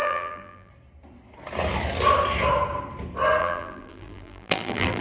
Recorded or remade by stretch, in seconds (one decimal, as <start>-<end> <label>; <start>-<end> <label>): 0.0-0.7 remade; 0.7-3.4 recorded; 3.4-5.0 remade